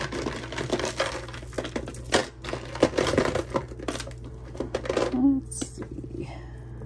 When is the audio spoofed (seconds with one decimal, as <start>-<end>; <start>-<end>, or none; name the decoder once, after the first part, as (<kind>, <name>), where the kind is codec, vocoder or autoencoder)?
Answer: none